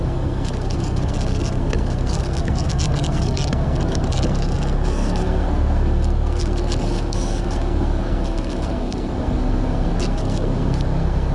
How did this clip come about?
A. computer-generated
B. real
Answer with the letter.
A